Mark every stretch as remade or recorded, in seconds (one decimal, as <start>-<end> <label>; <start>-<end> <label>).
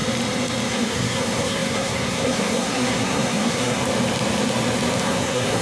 0.0-0.7 recorded; 0.7-3.8 remade; 3.8-5.0 recorded; 5.0-5.6 remade